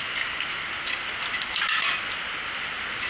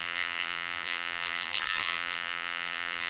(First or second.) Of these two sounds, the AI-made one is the second